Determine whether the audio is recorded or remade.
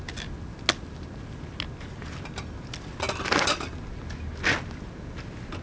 recorded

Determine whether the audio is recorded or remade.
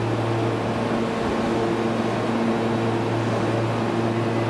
recorded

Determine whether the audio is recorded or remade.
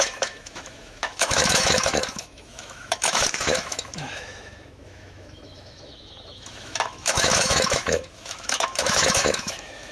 remade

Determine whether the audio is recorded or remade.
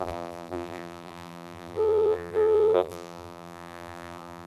remade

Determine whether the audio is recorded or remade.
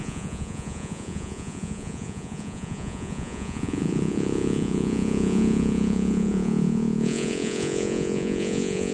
remade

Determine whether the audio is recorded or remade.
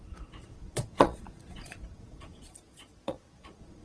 remade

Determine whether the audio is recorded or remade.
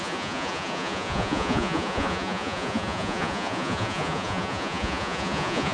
remade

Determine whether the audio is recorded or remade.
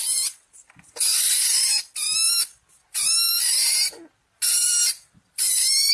recorded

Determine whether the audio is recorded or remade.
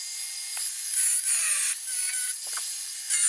recorded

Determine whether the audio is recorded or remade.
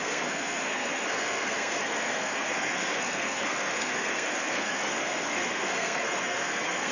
remade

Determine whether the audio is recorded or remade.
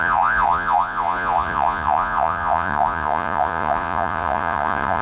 remade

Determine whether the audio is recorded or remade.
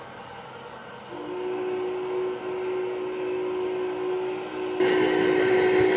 recorded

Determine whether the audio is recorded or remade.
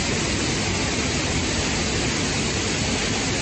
recorded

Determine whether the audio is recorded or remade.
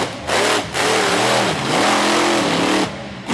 recorded